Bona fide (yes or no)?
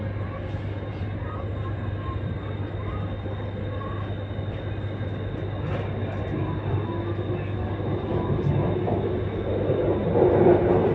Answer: yes